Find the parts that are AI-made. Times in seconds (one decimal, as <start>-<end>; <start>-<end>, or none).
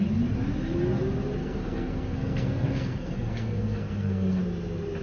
1.4-4.4